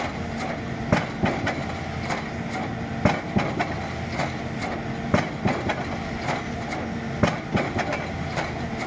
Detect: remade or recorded recorded